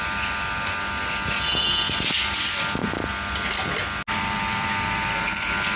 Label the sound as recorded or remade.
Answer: recorded